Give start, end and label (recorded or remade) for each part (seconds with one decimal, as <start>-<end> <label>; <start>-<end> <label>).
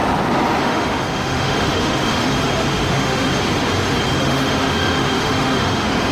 0.0-0.6 recorded; 0.6-2.2 remade; 2.2-2.7 recorded; 2.7-3.3 remade; 3.3-4.2 recorded; 4.2-6.1 remade